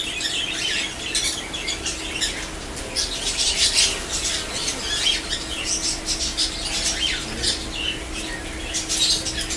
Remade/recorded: recorded